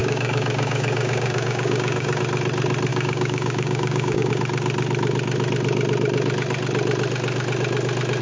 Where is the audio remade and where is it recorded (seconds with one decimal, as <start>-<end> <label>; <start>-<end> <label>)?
0.0-2.2 remade; 2.2-2.9 recorded; 2.9-4.3 remade; 4.3-8.2 recorded